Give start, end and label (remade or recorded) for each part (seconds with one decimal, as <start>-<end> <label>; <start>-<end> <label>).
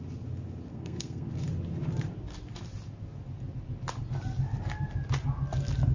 0.0-0.7 recorded; 0.7-1.3 remade; 1.3-5.9 recorded